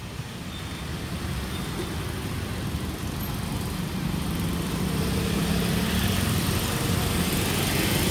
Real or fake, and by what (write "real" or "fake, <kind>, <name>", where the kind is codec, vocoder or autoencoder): real